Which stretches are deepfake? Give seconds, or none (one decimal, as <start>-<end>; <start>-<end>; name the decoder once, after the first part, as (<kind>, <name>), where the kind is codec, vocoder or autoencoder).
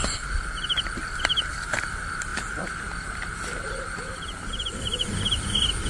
none